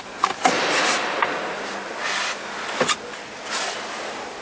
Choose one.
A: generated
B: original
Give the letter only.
B